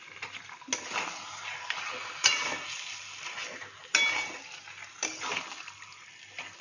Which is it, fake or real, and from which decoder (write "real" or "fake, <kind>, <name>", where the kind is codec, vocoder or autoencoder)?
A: real